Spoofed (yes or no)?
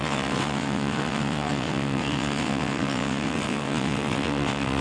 yes